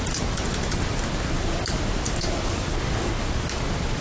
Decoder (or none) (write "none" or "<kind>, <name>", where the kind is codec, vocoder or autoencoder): none